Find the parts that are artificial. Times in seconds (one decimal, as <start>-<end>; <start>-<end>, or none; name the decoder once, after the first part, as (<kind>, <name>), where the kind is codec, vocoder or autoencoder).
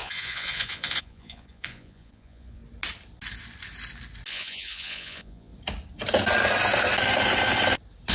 0.0-2.6 (vocoder, Vocos); 4.3-5.5